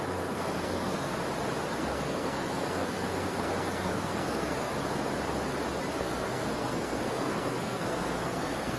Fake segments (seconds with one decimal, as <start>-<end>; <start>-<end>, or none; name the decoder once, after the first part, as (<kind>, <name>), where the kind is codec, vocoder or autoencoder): 0.0-1.1 (codec, SNAC); 1.7-4.7; 6.0-8.8